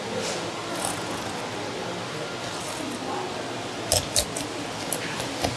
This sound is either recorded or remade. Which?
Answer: recorded